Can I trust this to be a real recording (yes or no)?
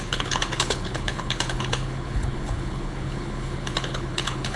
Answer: no